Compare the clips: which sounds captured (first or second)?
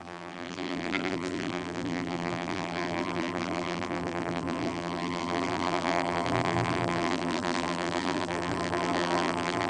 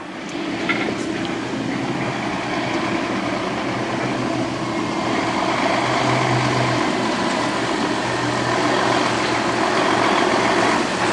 second